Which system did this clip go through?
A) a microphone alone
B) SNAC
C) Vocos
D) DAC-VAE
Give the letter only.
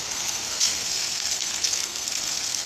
B